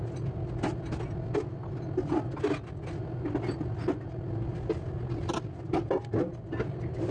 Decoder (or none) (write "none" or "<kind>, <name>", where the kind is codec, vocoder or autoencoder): none